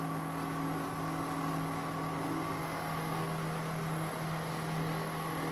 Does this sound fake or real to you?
real